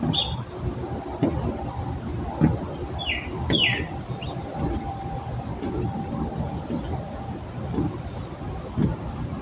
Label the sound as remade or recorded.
recorded